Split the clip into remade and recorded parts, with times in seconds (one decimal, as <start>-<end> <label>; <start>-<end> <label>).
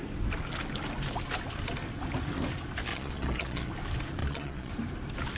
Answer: 0.0-2.9 recorded; 2.9-3.7 remade; 3.7-4.2 recorded; 4.2-4.7 remade; 4.7-5.4 recorded